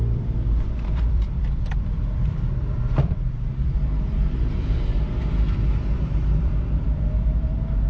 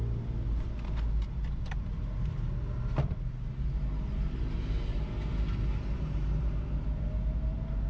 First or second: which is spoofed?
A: first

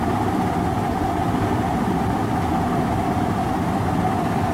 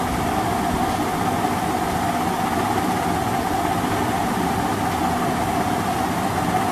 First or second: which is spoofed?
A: first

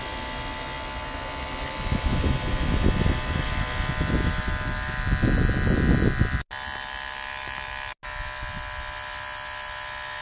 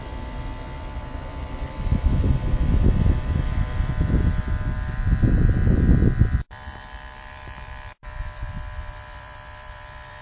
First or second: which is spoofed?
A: second